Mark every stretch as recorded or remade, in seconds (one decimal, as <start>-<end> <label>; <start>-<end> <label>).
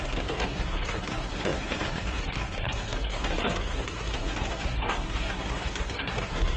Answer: 0.0-6.6 remade